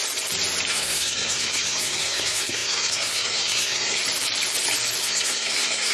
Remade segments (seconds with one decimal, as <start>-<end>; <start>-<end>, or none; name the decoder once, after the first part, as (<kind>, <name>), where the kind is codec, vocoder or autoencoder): 0.7-4.0 (codec, SNAC); 5.0-5.9